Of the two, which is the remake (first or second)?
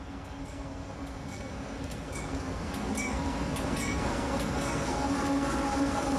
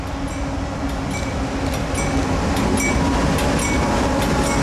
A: first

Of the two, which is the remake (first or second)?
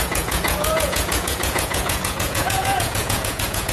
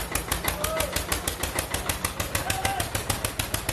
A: first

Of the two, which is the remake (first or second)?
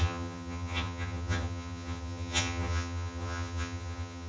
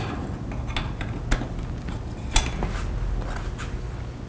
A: first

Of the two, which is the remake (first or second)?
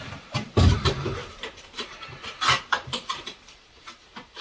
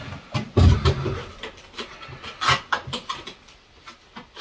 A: first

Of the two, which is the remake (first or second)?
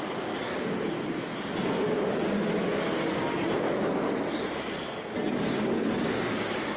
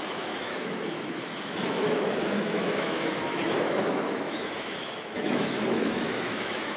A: second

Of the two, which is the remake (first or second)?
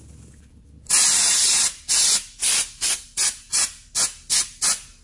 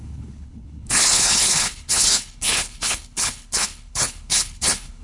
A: second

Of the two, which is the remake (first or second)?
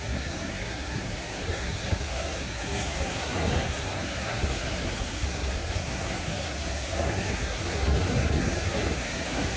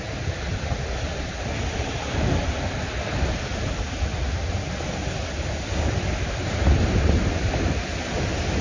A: first